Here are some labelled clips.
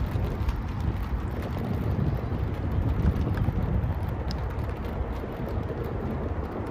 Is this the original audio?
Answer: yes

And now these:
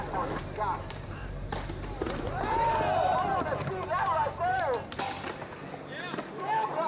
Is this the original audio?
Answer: yes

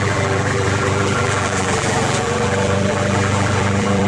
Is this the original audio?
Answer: no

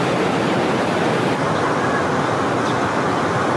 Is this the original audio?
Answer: yes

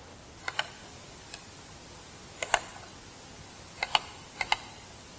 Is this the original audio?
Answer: yes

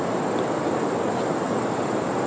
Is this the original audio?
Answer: yes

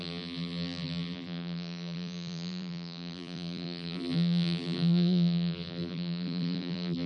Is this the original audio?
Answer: no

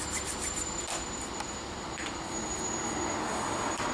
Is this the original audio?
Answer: no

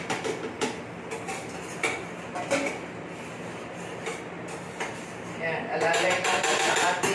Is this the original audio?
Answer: no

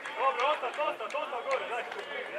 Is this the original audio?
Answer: no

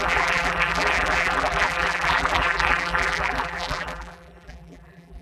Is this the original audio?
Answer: no